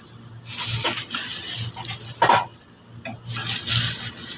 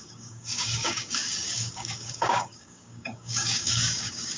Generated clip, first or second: second